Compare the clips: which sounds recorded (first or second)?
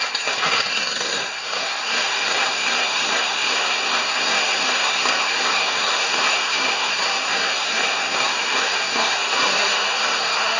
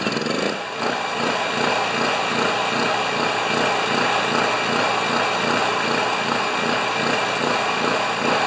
second